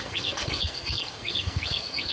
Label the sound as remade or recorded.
remade